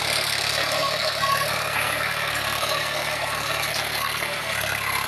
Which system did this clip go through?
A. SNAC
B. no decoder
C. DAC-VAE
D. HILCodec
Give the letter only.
A